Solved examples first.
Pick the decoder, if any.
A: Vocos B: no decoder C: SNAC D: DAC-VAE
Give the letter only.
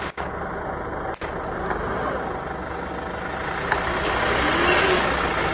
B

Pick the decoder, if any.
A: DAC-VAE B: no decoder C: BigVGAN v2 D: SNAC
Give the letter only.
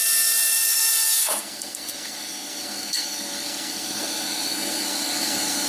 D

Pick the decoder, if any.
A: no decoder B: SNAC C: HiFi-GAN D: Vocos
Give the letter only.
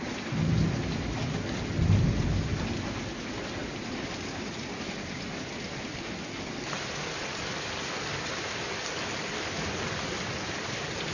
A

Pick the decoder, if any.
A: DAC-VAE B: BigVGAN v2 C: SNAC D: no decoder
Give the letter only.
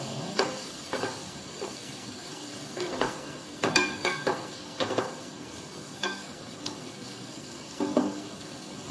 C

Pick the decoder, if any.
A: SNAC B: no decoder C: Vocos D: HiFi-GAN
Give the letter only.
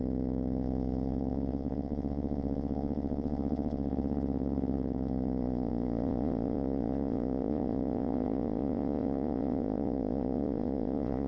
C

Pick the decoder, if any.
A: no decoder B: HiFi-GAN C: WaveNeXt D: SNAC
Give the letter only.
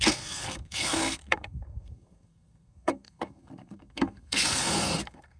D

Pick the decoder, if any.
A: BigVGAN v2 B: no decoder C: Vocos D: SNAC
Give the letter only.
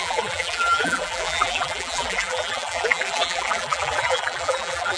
A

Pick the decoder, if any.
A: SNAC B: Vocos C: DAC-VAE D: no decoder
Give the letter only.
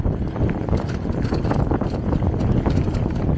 D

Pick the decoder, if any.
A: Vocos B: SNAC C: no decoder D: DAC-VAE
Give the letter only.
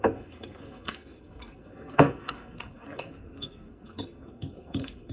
B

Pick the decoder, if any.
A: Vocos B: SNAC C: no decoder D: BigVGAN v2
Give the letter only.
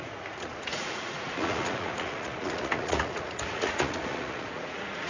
A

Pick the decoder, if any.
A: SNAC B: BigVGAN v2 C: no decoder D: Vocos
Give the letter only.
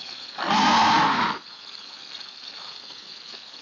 C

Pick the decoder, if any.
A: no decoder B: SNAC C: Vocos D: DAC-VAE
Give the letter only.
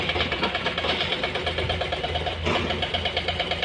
A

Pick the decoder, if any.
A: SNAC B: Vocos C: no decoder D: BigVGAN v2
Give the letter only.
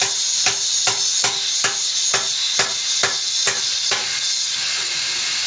C